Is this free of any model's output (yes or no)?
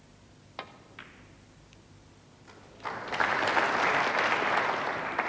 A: yes